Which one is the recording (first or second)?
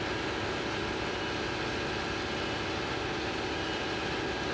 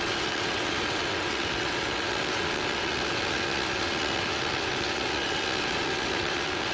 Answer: first